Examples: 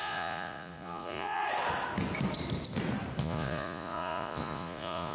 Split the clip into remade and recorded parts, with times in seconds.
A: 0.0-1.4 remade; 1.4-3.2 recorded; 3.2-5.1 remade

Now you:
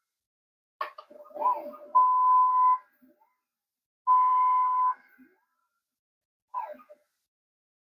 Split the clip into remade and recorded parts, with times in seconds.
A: 0.0-7.9 recorded

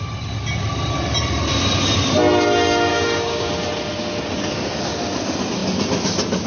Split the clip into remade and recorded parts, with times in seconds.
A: 0.0-2.9 recorded; 2.9-3.5 remade; 3.5-6.5 recorded

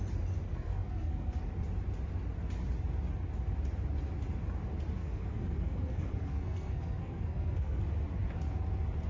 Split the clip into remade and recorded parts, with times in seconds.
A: 0.0-0.5 recorded; 0.5-1.4 remade; 1.4-5.0 recorded; 5.0-7.8 remade; 7.8-9.1 recorded

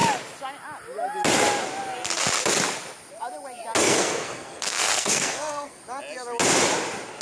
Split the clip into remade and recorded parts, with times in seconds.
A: 0.0-3.8 recorded; 3.8-5.8 remade; 5.8-7.2 recorded

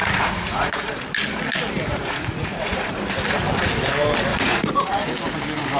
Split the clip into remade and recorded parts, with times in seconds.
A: 0.0-1.0 remade; 1.0-1.9 recorded; 1.9-3.0 remade; 3.0-4.3 recorded; 4.3-5.1 remade; 5.1-5.8 recorded